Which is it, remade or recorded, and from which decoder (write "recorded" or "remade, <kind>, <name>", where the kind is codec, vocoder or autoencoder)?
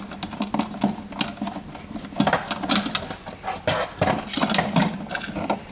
recorded